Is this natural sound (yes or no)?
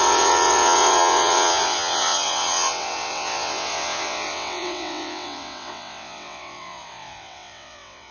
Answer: no